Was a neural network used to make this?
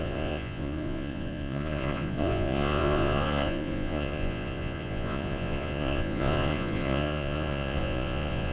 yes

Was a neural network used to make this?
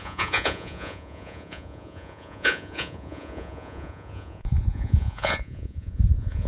yes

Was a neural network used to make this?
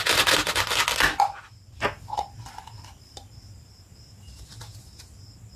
no